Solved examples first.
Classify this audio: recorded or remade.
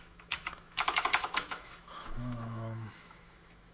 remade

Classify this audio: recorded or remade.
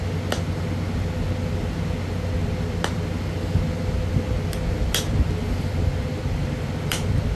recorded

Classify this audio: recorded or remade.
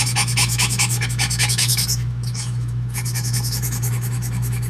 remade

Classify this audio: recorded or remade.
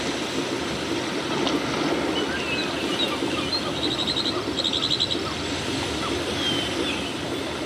recorded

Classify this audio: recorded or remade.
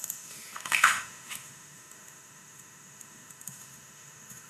remade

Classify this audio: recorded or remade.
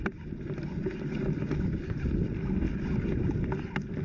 recorded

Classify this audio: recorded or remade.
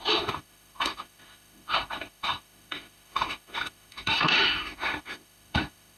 remade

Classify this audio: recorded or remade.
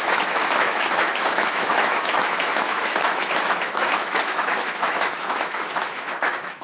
remade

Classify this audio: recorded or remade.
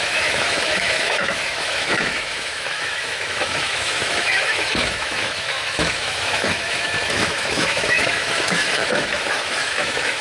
remade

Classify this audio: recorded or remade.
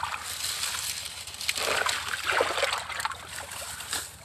recorded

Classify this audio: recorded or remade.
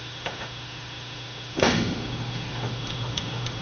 remade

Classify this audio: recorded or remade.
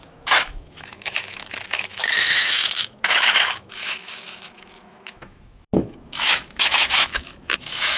remade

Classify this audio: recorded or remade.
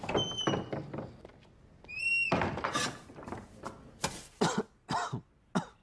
recorded